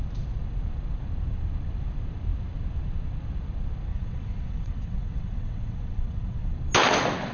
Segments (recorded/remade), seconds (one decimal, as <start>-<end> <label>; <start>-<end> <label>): 0.0-3.9 recorded; 3.9-6.5 remade; 6.5-7.3 recorded